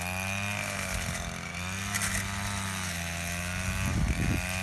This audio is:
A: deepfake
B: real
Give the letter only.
B